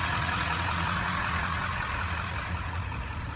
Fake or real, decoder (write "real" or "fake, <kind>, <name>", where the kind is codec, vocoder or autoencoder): fake, vocoder, Vocos